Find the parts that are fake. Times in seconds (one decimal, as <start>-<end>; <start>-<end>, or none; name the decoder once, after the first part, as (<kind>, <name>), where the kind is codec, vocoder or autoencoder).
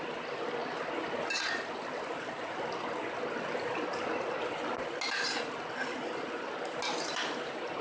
none